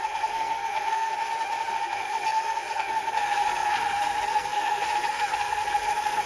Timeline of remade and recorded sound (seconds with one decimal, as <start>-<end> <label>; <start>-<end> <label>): 0.0-1.1 remade; 1.1-1.7 recorded; 1.7-6.3 remade